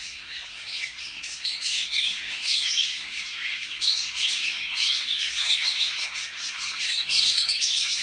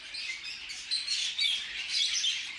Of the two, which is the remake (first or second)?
first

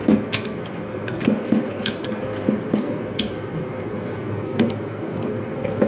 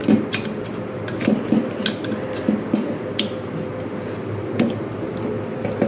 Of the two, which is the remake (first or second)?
first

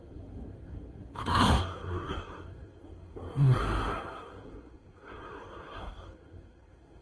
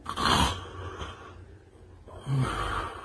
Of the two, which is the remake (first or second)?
first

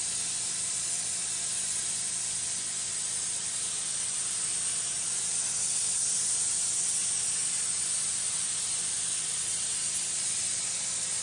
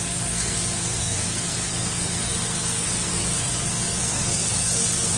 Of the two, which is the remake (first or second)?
second